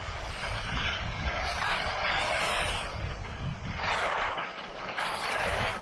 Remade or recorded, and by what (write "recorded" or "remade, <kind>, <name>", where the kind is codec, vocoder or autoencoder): remade, codec, DAC